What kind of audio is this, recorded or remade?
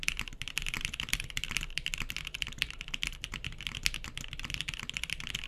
recorded